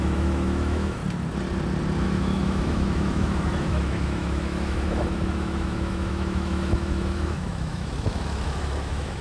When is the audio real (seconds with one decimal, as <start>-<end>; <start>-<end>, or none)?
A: 1.0-2.0